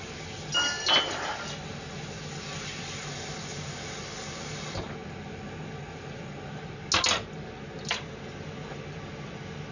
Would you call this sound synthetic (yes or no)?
no